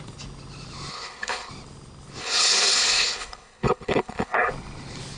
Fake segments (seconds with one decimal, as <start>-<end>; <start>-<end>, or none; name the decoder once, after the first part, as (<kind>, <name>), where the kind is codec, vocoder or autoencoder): 0.9-1.5 (codec, HILCodec); 2.2-4.5